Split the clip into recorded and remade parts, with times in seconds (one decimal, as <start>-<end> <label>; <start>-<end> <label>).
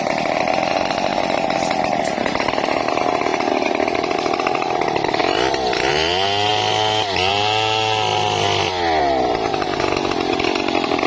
0.0-11.1 recorded